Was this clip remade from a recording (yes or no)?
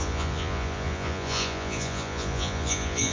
yes